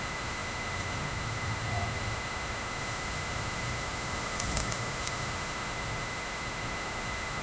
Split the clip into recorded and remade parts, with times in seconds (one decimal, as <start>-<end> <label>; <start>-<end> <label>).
0.0-7.4 remade